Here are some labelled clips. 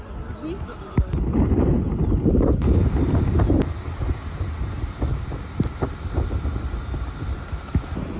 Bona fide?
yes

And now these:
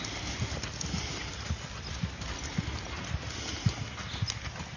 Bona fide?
yes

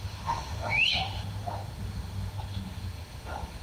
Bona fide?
no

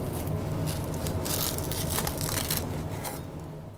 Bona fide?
yes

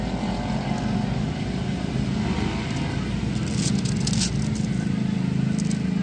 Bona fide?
yes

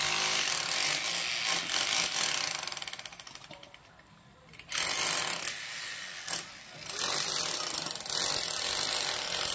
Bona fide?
yes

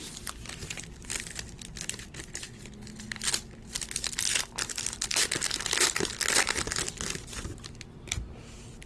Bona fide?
yes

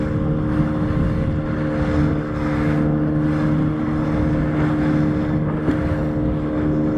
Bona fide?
yes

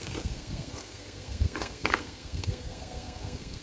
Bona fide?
no